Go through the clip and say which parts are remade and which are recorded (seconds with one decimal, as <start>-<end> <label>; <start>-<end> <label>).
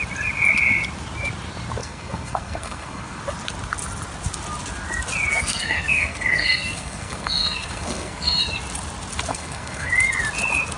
0.0-1.8 recorded; 1.8-3.2 remade; 3.2-5.3 recorded; 5.3-8.5 remade; 8.5-9.3 recorded; 9.3-9.9 remade; 9.9-10.8 recorded